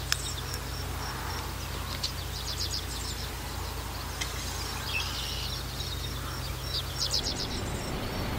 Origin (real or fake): real